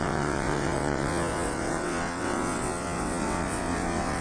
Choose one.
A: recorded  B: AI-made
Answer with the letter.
B